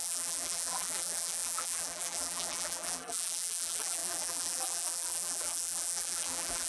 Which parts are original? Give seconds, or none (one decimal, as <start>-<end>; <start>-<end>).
none